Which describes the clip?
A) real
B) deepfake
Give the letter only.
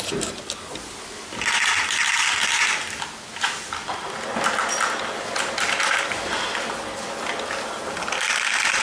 A